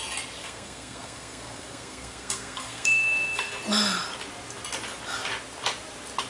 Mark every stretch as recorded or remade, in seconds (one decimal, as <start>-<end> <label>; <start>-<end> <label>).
0.0-0.4 recorded; 0.4-3.6 remade; 3.6-6.3 recorded